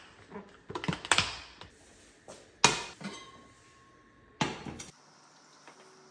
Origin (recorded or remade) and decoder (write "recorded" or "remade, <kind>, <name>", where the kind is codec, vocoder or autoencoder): recorded